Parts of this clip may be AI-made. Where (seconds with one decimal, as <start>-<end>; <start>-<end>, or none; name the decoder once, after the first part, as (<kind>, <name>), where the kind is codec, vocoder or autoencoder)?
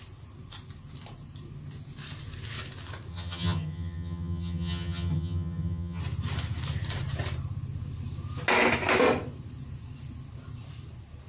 3.1-6.0 (vocoder, HiFi-GAN)